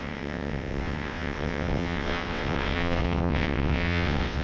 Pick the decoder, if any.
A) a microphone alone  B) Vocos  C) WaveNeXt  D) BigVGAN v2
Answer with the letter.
C